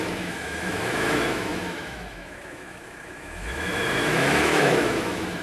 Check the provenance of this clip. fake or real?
fake